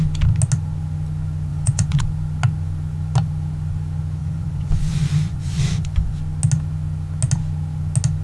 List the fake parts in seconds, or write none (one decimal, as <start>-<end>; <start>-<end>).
1.5-2.0; 4.2-6.2